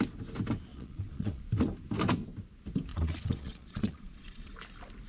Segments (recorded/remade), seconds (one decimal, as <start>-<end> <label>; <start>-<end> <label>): 0.0-0.7 recorded; 0.7-1.4 remade; 1.4-2.9 recorded; 2.9-4.5 remade; 4.5-5.1 recorded